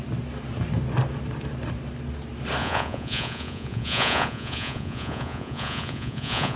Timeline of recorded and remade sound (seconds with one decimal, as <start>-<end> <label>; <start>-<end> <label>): 0.0-2.6 recorded; 2.6-6.6 remade